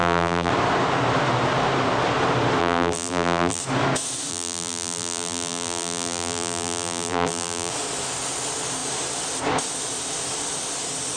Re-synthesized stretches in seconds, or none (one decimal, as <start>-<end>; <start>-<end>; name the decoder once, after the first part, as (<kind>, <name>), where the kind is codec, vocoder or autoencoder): 0.0-0.5 (vocoder, BigVGAN v2); 2.6-3.6; 4.3-7.7